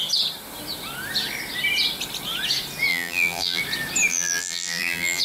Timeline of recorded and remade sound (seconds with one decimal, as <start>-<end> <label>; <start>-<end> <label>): 0.0-2.9 recorded; 2.9-3.6 remade; 3.6-4.1 recorded; 4.1-5.2 remade